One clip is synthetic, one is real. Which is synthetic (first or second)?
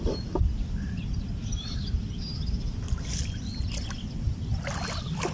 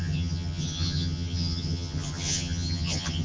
second